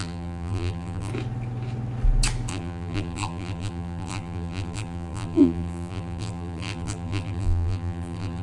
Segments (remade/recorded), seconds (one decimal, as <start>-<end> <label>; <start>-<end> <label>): 0.0-1.1 remade; 1.1-2.5 recorded; 2.5-8.4 remade